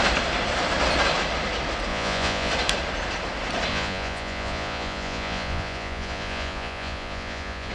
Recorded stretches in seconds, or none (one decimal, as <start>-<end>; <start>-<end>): 0.0-1.9; 2.5-3.7